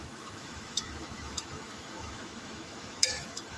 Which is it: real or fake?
fake